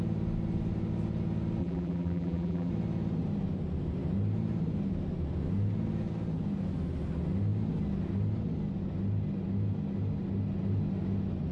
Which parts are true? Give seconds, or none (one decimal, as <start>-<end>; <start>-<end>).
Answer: 0.0-1.6; 2.7-11.5